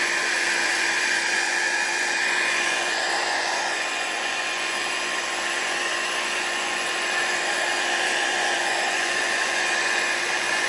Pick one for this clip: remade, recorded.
remade